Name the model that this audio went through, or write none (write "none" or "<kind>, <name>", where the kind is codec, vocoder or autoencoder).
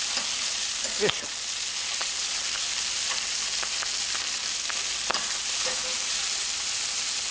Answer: none